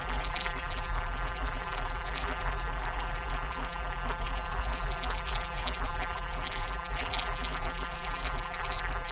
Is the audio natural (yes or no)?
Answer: no